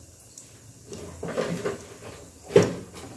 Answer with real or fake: real